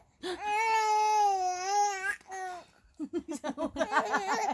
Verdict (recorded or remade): recorded